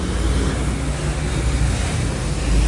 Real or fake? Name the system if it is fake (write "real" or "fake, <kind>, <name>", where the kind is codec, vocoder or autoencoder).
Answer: real